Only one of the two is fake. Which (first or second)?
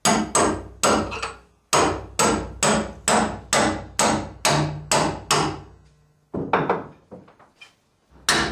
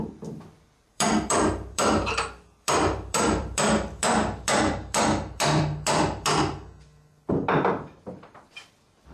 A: second